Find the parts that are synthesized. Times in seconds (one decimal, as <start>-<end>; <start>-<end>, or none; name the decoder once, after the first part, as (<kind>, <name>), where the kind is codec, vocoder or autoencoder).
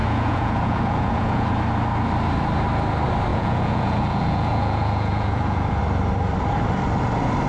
0.0-1.5 (vocoder, Vocos); 3.3-5.8